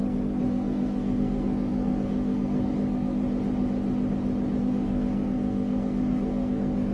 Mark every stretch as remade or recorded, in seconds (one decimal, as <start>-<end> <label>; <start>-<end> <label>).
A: 0.0-3.2 remade; 3.2-4.6 recorded; 4.6-6.9 remade